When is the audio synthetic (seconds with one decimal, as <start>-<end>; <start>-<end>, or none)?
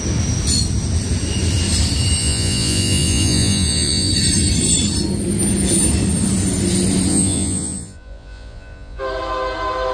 2.2-4.1; 7.1-9.0